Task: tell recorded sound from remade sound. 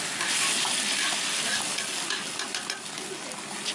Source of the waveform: recorded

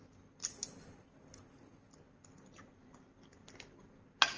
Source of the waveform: recorded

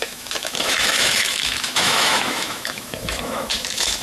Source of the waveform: remade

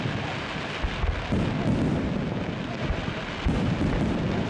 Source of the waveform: recorded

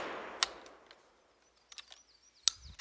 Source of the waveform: recorded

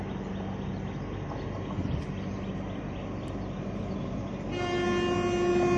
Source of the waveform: recorded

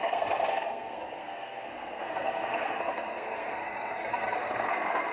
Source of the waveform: remade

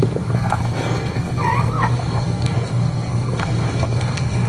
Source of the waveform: remade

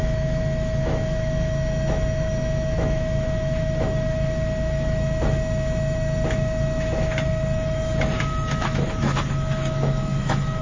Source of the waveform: remade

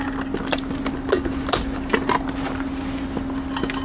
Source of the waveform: recorded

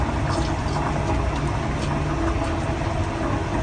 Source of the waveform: recorded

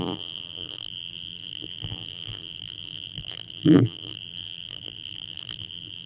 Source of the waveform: remade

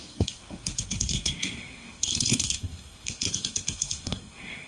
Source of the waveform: remade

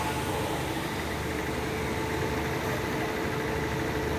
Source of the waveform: recorded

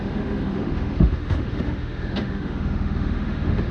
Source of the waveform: remade